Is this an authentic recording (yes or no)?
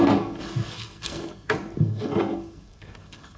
no